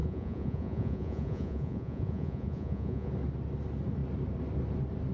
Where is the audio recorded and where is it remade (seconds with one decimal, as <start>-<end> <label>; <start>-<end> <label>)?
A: 0.0-3.1 remade; 3.1-5.1 recorded